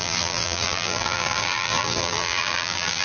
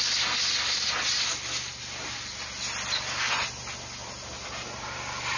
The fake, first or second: first